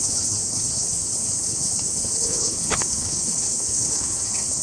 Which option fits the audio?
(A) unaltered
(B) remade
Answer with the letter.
B